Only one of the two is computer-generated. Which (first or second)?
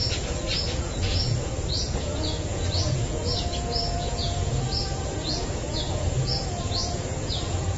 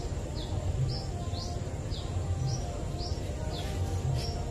first